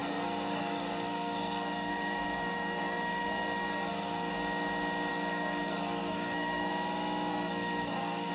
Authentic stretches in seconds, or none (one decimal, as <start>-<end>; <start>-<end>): 4.3-5.1; 6.7-7.3